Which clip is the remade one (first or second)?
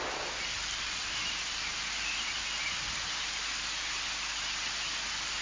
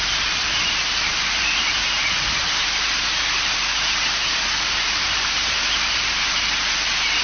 second